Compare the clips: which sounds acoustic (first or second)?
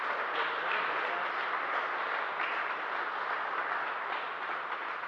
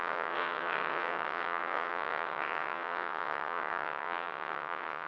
first